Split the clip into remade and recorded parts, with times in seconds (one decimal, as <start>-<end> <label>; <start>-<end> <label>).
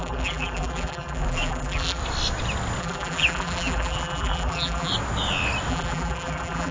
0.0-2.0 remade; 2.0-2.8 recorded; 2.8-4.9 remade; 4.9-5.7 recorded; 5.7-6.7 remade